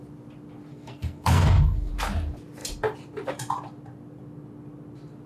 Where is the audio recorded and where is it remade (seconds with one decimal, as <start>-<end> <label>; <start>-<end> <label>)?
0.0-0.7 recorded; 0.7-1.9 remade; 1.9-5.3 recorded